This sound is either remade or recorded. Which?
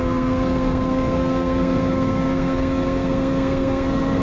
remade